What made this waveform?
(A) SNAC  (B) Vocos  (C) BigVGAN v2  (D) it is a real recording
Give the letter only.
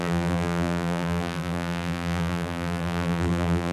C